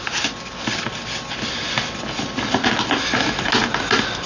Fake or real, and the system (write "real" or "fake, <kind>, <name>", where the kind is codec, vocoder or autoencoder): real